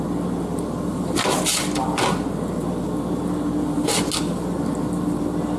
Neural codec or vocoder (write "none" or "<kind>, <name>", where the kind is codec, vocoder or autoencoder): none